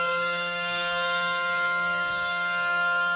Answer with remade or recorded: remade